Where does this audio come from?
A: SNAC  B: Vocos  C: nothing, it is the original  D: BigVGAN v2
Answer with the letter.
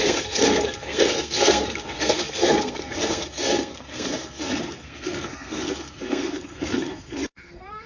A